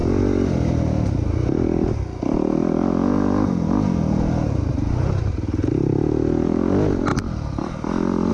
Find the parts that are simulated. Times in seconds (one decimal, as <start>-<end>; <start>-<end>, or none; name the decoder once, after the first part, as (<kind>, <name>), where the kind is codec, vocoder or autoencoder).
none